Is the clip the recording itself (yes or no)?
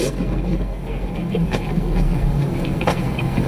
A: no